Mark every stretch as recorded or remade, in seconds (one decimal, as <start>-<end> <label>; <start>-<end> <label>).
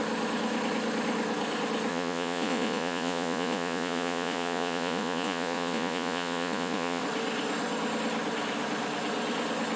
0.0-1.9 recorded; 1.9-7.0 remade; 7.0-9.8 recorded